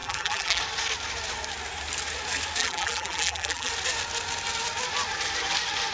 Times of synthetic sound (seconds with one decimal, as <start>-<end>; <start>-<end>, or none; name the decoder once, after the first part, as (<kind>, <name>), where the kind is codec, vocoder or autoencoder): 0.0-0.6 (vocoder, BigVGAN v2); 2.6-3.7